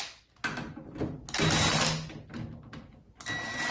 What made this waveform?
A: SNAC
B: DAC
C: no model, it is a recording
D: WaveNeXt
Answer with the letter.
C